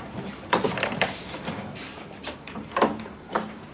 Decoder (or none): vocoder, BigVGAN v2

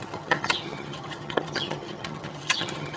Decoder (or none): vocoder, HiFi-GAN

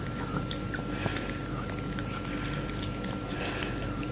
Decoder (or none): none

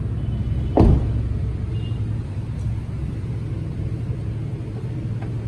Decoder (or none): none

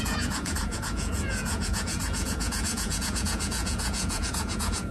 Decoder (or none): vocoder, Vocos